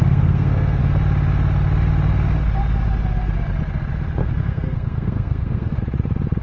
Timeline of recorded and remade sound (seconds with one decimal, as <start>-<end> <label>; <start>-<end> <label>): 0.0-0.8 remade; 0.8-4.2 recorded; 4.2-5.8 remade; 5.8-6.4 recorded